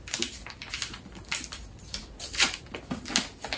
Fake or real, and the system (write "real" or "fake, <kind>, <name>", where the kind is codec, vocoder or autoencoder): real